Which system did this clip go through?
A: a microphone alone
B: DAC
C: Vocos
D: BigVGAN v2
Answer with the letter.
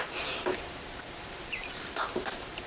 D